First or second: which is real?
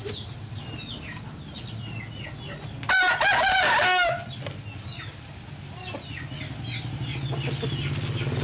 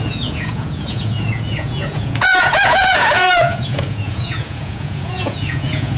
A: first